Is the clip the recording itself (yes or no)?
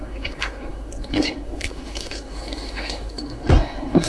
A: no